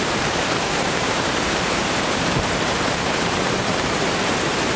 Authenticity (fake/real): fake